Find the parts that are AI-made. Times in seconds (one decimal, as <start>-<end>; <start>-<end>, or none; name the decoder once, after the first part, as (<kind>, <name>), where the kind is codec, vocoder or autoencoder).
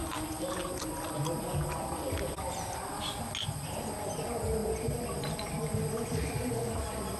4.6-5.7 (vocoder, BigVGAN v2)